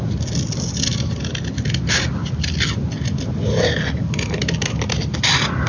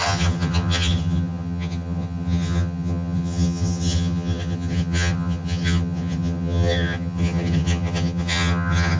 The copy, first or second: second